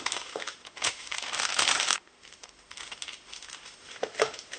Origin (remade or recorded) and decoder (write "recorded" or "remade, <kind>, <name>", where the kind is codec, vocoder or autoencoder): remade, autoencoder, DAC-VAE